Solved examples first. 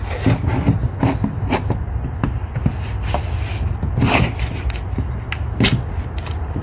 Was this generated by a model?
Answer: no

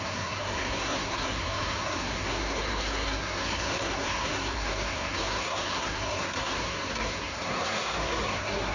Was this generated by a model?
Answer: yes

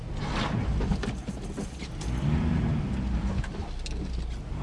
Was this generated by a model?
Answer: no